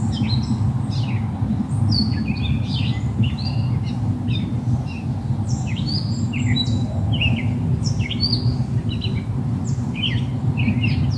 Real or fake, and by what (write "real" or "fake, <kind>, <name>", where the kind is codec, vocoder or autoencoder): real